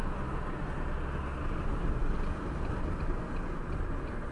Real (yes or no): yes